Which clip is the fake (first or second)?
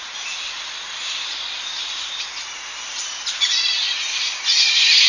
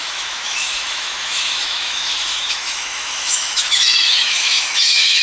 second